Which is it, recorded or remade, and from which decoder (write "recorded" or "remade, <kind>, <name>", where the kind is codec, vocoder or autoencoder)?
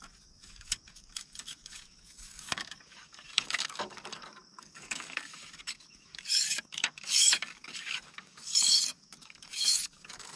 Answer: remade, codec, DAC